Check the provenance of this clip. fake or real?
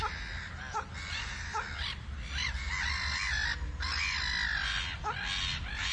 real